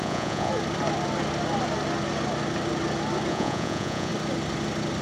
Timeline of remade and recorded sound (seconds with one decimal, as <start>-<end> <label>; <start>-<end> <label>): 0.0-0.5 remade; 0.5-3.3 recorded; 3.3-4.1 remade; 4.1-5.0 recorded